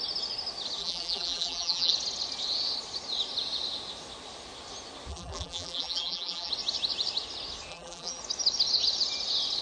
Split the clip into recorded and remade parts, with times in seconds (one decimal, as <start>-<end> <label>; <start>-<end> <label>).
0.0-0.8 recorded; 0.8-1.9 remade; 1.9-5.1 recorded; 5.1-6.5 remade; 6.5-7.7 recorded; 7.7-8.2 remade; 8.2-9.6 recorded